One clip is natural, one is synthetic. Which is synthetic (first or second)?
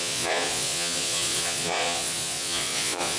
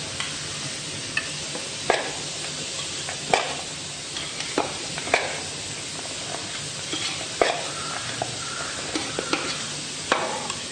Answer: first